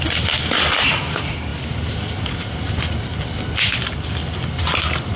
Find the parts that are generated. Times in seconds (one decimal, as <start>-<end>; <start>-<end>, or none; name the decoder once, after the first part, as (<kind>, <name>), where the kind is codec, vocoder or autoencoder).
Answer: none